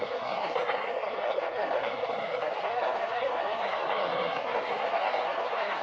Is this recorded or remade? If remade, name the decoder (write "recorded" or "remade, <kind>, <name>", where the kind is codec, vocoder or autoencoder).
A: remade, codec, SNAC